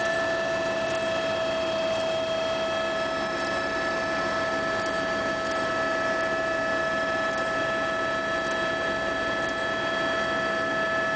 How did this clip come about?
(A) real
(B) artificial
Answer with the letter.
A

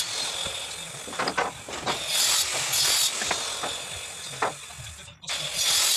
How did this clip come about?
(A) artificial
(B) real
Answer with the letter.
B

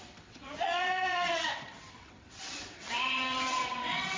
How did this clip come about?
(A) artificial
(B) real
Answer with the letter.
A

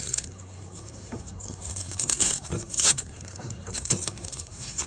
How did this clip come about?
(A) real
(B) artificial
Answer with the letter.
B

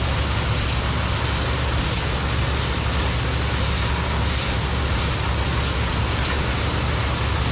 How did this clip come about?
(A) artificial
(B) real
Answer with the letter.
B